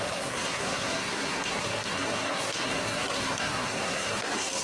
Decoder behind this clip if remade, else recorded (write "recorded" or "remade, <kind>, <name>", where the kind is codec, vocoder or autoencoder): remade, codec, SNAC